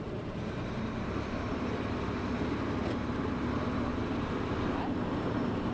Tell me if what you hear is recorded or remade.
recorded